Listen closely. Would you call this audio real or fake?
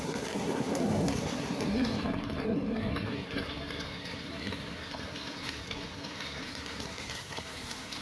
fake